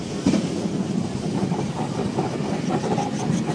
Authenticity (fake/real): real